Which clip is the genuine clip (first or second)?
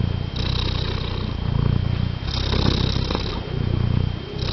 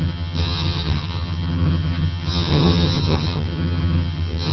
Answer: first